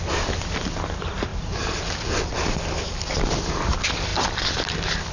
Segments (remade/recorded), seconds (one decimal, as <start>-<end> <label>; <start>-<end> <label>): 0.0-5.1 recorded